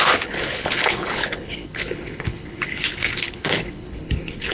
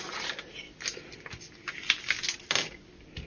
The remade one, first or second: first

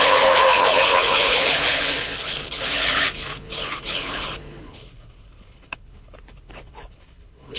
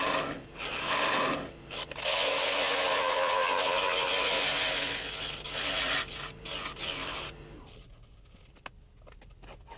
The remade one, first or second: first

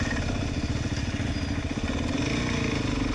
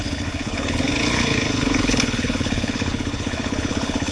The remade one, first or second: second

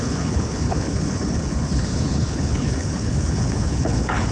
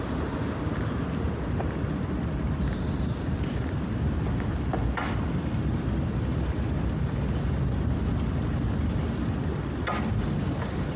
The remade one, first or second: first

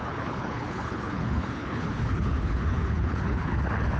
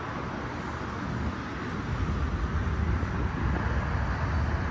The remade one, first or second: first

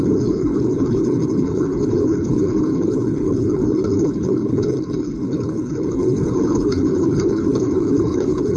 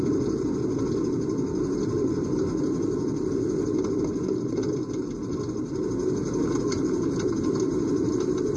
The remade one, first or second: first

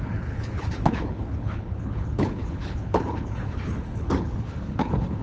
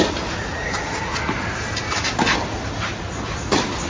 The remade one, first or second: first